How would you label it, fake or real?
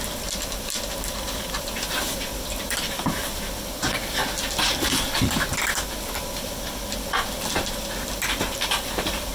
fake